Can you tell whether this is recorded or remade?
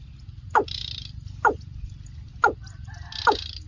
recorded